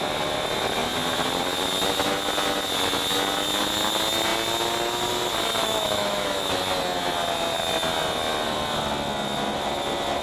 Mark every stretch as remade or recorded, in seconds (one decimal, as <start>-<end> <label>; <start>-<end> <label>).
0.0-5.6 recorded; 5.6-6.6 remade; 6.6-10.2 recorded